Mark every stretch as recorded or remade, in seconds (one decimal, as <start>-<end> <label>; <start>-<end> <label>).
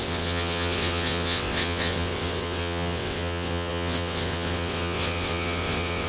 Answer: 0.0-6.1 remade